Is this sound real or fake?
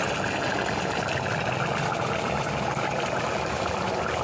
real